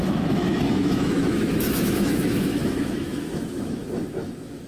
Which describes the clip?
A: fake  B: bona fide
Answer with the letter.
A